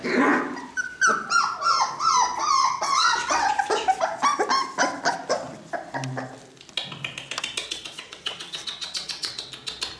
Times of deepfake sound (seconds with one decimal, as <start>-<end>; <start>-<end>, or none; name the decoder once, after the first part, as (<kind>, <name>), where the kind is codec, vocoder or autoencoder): 2.6-3.5 (vocoder, WaveNeXt); 7.6-9.5